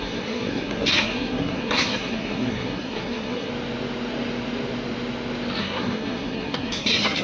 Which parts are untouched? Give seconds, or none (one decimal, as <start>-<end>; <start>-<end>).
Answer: 3.5-5.6